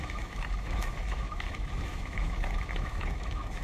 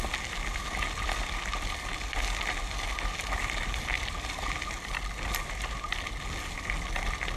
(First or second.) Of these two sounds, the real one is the second